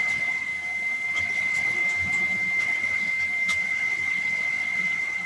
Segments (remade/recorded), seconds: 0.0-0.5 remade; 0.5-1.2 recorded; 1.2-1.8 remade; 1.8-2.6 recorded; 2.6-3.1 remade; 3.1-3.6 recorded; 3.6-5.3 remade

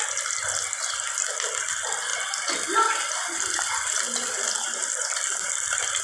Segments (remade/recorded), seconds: 0.0-2.1 recorded; 2.1-6.0 remade

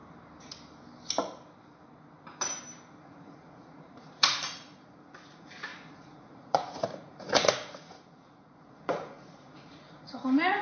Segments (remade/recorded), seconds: 0.0-3.0 recorded; 3.0-10.6 remade

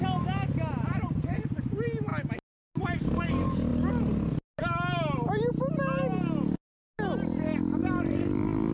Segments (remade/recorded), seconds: 0.0-8.7 recorded

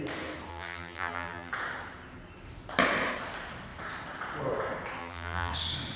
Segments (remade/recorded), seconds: 0.0-0.5 recorded; 0.5-1.5 remade; 1.5-5.0 recorded; 5.0-5.5 remade; 5.5-6.0 recorded